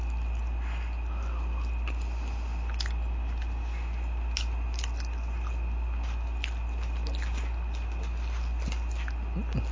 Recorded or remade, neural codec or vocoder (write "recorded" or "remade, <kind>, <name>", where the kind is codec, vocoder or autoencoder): recorded